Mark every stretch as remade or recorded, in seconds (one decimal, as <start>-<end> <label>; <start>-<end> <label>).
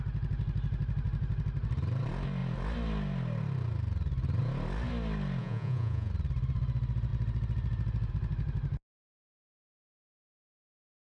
0.0-5.4 recorded; 5.4-6.1 remade; 6.1-11.2 recorded